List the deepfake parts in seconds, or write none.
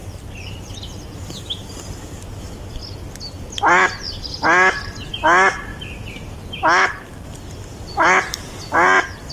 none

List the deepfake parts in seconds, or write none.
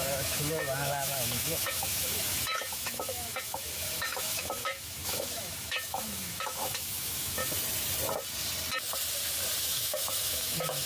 0.0-7.4 (autoencoder, DAC-VAE); 9.6-10.9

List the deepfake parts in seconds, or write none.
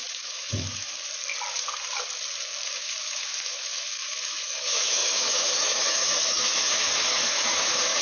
0.0-0.9 (autoencoder, DAC-VAE); 2.7-8.0